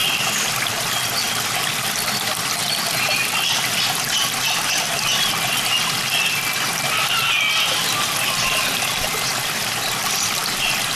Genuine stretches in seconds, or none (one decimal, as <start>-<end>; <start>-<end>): 0.5-11.0